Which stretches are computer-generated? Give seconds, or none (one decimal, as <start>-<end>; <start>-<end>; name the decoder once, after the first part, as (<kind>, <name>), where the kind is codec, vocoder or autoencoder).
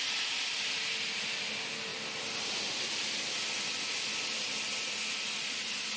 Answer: none